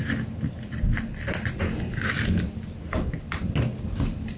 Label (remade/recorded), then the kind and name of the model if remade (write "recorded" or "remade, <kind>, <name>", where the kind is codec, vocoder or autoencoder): recorded